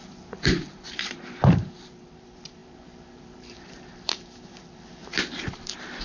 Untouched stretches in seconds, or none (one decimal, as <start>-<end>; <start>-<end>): none